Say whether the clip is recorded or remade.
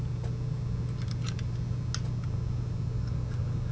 recorded